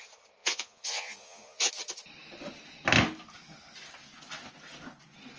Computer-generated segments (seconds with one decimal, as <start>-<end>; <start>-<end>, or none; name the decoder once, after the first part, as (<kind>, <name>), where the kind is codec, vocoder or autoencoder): 0.4-1.7 (vocoder, Vocos)